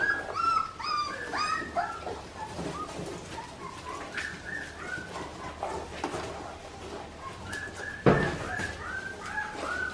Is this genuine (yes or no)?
yes